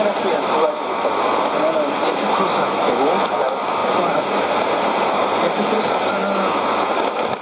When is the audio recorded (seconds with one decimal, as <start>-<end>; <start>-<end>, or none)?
0.0-7.4